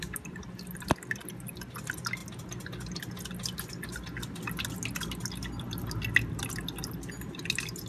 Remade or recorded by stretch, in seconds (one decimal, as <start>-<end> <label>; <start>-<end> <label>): 0.0-7.9 recorded